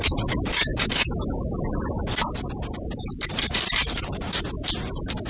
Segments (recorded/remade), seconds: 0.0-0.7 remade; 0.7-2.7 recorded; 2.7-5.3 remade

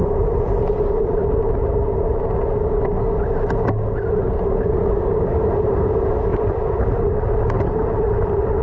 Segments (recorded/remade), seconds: 0.0-2.1 remade; 2.1-4.4 recorded; 4.4-8.6 remade

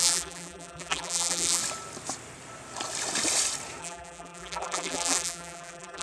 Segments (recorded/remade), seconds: 0.0-1.6 remade; 1.6-3.8 recorded; 3.8-6.0 remade

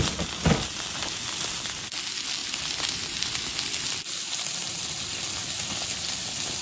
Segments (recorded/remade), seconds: 0.0-2.4 recorded; 2.4-3.7 remade; 3.7-6.6 recorded

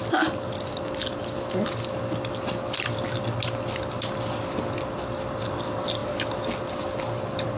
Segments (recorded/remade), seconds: 0.0-7.6 recorded

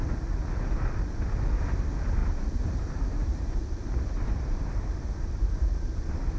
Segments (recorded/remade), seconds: 0.0-2.2 recorded; 2.2-6.0 remade; 6.0-6.4 recorded